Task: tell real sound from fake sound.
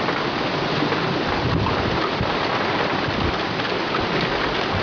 fake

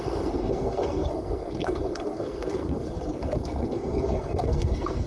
fake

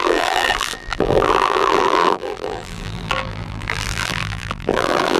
fake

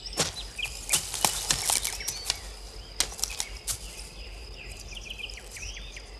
real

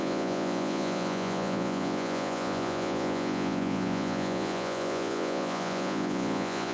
fake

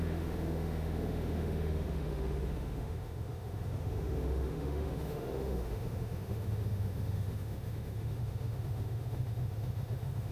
fake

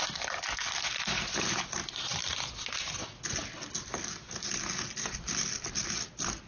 real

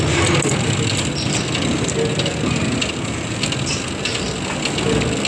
real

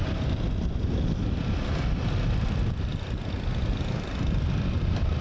real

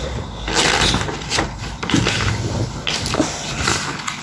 real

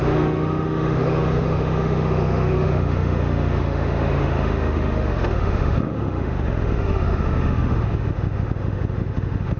fake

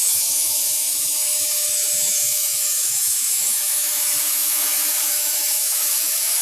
fake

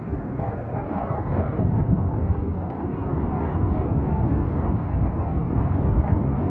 fake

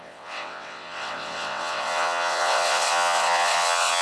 fake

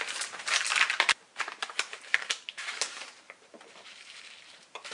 fake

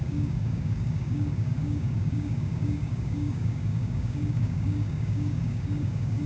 fake